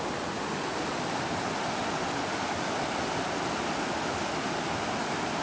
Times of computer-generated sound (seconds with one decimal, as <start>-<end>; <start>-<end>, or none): none